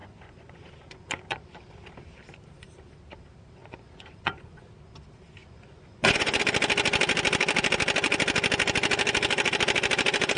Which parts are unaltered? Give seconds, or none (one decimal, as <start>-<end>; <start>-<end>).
1.4-3.6; 4.7-5.4; 6.4-10.4